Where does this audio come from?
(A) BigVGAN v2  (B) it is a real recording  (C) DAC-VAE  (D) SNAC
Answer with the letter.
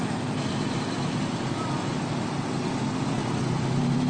A